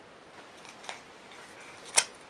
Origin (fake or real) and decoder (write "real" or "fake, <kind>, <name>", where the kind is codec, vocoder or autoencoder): real